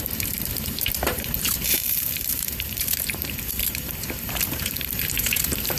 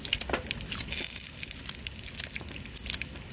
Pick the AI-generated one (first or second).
first